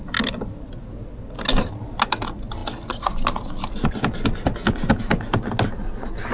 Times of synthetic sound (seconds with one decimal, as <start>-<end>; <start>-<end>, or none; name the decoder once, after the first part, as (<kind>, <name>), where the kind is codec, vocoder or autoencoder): none